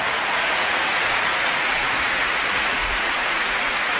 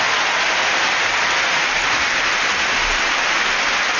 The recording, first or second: second